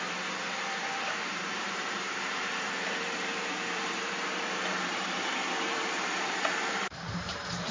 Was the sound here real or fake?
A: fake